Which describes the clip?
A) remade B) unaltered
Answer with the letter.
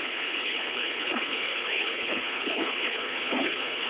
A